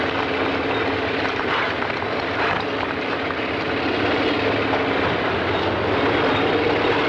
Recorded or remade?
recorded